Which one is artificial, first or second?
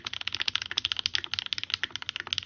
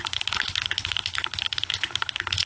second